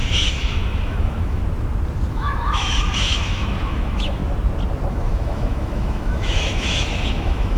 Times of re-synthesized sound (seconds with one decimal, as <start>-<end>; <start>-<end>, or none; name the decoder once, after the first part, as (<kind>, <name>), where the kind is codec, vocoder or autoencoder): 0.0-1.4 (autoencoder, DAC-VAE); 2.1-4.2; 4.9-7.6